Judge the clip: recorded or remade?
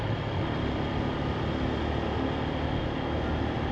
recorded